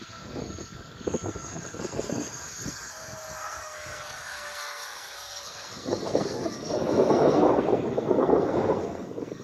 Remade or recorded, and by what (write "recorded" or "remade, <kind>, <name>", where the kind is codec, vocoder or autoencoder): remade, codec, SNAC